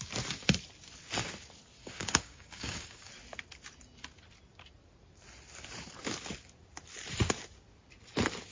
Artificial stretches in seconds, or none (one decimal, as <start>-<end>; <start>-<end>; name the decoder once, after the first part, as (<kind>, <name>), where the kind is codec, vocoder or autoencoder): 1.8-3.1 (codec, DAC)